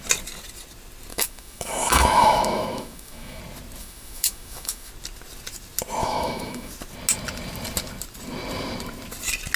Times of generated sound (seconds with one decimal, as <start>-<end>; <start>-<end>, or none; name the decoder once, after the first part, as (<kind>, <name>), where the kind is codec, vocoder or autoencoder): 1.1-3.4 (autoencoder, DAC-VAE); 3.8-4.9; 6.0-6.7